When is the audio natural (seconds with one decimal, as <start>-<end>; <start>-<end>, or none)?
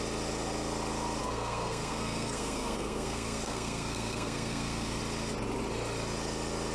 0.0-1.2; 5.0-6.7